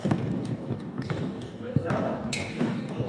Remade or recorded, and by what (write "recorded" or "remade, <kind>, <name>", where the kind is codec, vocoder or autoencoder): remade, codec, DAC